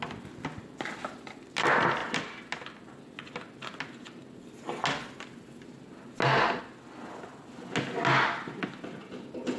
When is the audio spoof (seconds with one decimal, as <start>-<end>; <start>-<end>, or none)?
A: none

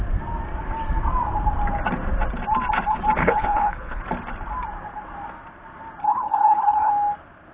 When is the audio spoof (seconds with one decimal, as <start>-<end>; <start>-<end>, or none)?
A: 3.2-4.0; 6.0-6.9

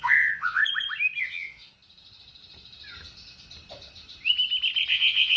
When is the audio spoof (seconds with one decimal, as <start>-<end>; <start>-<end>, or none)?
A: 0.0-0.6; 1.2-1.7; 4.9-5.4

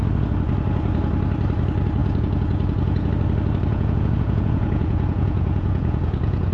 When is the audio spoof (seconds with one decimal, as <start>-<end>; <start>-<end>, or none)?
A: 2.0-3.1; 3.7-6.5